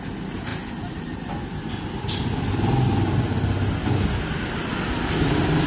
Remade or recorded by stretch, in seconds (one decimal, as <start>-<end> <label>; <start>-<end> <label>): 0.0-5.7 recorded